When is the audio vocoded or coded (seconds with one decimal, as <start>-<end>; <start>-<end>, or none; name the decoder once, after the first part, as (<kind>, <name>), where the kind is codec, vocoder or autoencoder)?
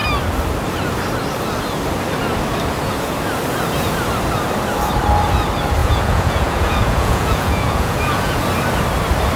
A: 5.8-8.4 (vocoder, Vocos)